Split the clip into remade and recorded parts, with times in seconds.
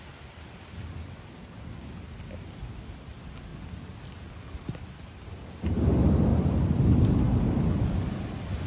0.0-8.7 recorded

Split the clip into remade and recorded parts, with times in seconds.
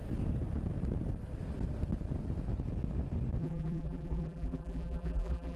0.0-3.4 recorded; 3.4-5.6 remade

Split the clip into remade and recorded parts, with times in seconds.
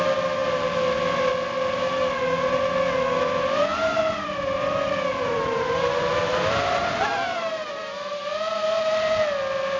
0.0-3.7 recorded; 3.7-8.2 remade; 8.2-9.8 recorded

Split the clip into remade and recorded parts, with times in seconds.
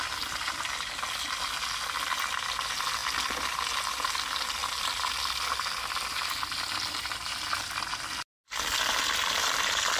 0.0-10.0 recorded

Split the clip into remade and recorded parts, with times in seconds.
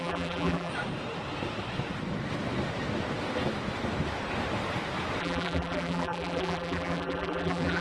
0.0-0.7 remade; 0.7-5.2 recorded; 5.2-7.8 remade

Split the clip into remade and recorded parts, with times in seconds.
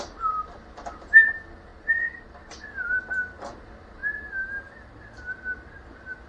0.0-1.7 recorded; 1.7-2.6 remade; 2.6-4.0 recorded; 4.0-4.9 remade; 4.9-6.3 recorded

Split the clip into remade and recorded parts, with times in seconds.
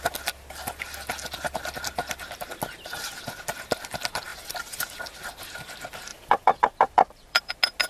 0.0-4.3 recorded; 4.3-5.0 remade; 5.0-6.1 recorded; 6.1-7.5 remade; 7.5-7.9 recorded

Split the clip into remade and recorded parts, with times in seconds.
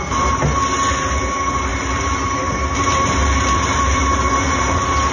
0.0-1.7 recorded; 1.7-5.1 remade